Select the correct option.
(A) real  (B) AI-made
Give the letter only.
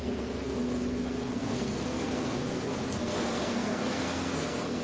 B